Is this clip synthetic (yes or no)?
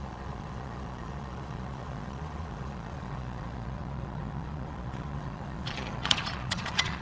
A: yes